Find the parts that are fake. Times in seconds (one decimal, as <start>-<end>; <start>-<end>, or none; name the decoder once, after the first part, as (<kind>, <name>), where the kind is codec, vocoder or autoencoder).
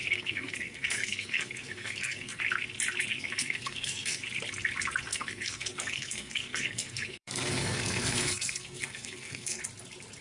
0.0-2.4 (codec, SNAC); 3.1-4.2; 5.1-9.6